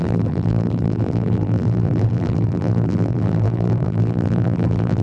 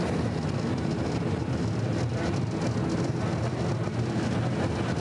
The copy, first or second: first